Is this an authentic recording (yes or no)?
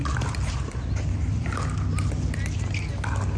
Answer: yes